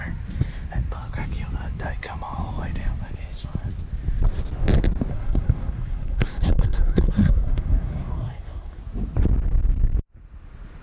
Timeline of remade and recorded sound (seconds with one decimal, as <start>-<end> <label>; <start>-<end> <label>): 0.0-5.1 recorded; 5.1-8.8 remade; 8.8-10.8 recorded